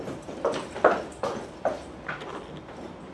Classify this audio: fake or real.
real